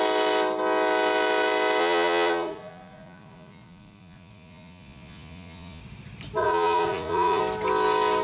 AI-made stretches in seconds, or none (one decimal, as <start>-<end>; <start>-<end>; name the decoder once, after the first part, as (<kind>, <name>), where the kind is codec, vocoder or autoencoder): 1.8-5.8 (vocoder, Vocos); 6.4-7.4

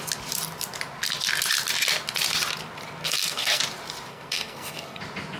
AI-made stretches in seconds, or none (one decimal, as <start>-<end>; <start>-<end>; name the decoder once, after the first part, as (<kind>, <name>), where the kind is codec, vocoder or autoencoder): 3.0-3.6 (codec, SNAC); 4.1-5.0

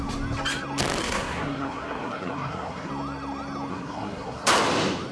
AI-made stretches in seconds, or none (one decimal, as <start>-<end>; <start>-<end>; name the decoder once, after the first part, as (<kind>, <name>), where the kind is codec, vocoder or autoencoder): 1.0-2.9 (codec, SNAC); 3.7-4.5

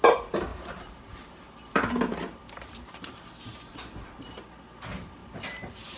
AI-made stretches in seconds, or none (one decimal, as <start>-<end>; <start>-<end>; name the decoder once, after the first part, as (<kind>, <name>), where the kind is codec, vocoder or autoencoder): 0.5-4.1 (vocoder, BigVGAN v2); 5.2-6.0